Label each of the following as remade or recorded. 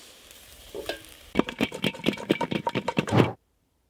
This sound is remade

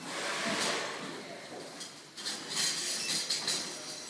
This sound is recorded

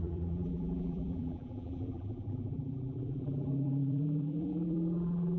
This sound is remade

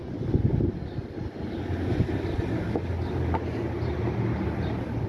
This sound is recorded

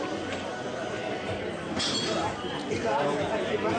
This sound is recorded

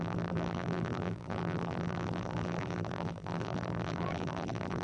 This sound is remade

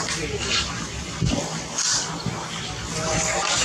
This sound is recorded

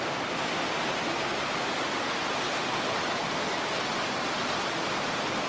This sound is recorded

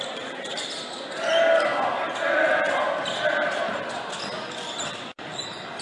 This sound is remade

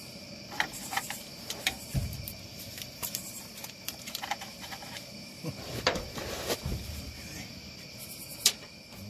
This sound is remade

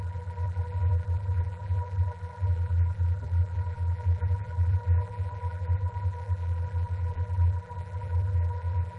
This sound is remade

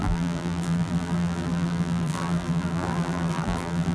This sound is remade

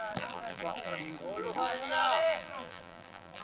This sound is remade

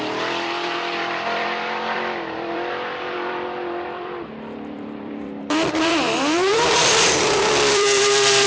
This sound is remade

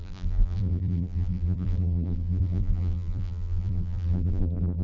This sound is remade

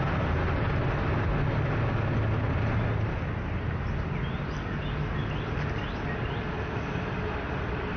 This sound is recorded